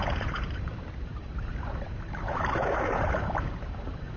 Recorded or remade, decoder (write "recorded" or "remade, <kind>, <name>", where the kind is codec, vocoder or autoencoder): remade, vocoder, BigVGAN v2